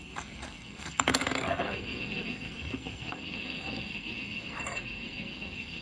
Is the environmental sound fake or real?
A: fake